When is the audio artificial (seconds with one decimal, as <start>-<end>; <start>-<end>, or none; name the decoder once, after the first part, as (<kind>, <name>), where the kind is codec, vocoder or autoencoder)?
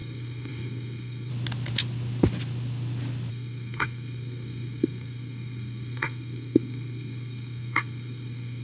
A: 0.0-1.3 (codec, SNAC); 3.3-8.6